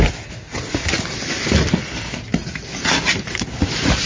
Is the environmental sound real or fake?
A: real